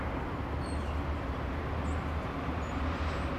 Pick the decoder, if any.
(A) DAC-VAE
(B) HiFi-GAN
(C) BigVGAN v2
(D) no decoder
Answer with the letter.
D